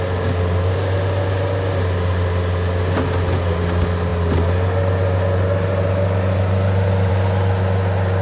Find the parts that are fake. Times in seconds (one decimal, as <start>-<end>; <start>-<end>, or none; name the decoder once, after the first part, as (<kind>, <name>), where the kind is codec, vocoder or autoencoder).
none